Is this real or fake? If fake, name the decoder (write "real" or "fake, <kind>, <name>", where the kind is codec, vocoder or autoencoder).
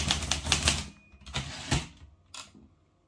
real